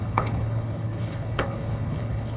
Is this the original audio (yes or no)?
no